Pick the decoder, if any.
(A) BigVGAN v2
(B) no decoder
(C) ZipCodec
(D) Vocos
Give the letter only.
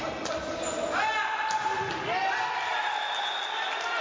B